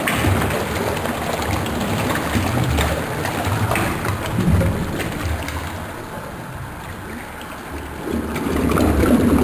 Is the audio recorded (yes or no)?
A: yes